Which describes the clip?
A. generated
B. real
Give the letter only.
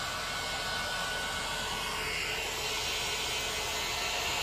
B